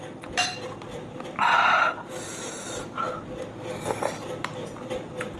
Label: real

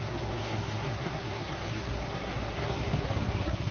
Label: fake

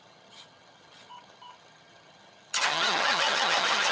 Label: fake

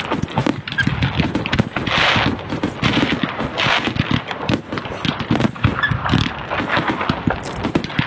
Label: real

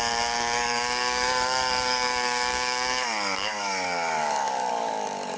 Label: fake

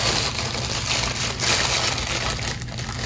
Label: real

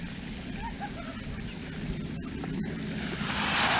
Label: real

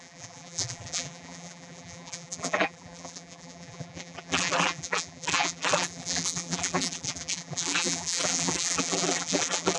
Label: fake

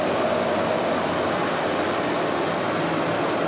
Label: real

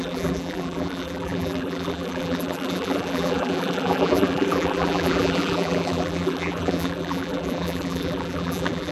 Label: fake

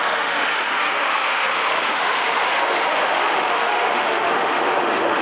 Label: fake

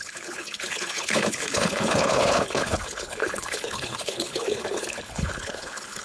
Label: fake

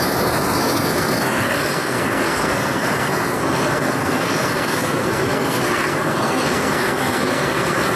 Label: fake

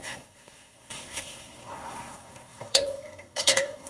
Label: fake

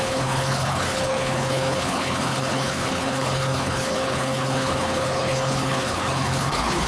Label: fake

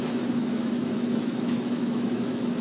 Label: fake